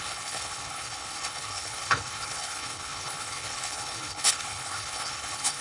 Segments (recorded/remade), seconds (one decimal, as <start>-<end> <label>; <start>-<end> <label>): 0.0-5.6 remade

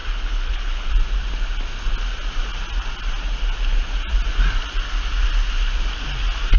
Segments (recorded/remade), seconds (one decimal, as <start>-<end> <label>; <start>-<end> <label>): 0.0-0.9 remade; 0.9-6.6 recorded

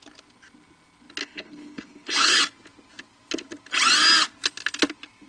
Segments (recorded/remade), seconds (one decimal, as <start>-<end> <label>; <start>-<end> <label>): 0.0-1.2 recorded; 1.2-2.4 remade; 2.4-5.3 recorded

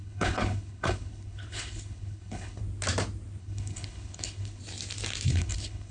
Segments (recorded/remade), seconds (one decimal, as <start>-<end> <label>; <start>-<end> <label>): 0.0-2.6 remade; 2.6-3.4 recorded; 3.4-4.6 remade; 4.6-5.3 recorded; 5.3-5.9 remade

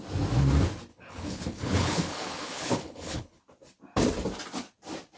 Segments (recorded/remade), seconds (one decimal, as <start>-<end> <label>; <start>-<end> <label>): 0.0-0.9 recorded; 0.9-3.4 remade; 3.4-5.2 recorded

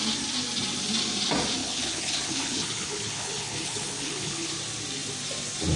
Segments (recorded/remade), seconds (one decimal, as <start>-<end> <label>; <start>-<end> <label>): 0.0-1.6 recorded; 1.6-4.5 remade; 4.5-5.8 recorded

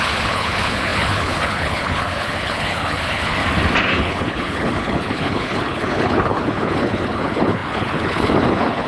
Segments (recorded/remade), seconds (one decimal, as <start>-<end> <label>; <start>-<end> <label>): 0.0-3.4 remade; 3.4-3.9 recorded; 3.9-8.9 remade

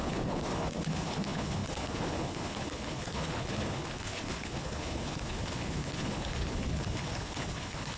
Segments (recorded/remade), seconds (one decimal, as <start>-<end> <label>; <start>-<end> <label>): 0.0-8.0 remade